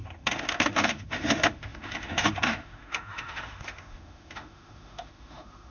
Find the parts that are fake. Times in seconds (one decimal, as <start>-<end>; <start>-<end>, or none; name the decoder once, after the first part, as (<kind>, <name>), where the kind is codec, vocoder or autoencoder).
0.0-5.7 (autoencoder, DAC-VAE)